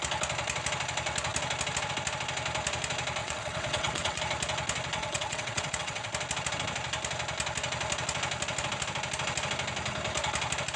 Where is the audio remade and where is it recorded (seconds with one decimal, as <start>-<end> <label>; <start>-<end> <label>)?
0.0-3.2 recorded; 3.2-4.2 remade; 4.2-5.0 recorded; 5.0-6.1 remade; 6.1-10.8 recorded